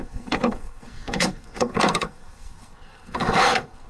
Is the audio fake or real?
fake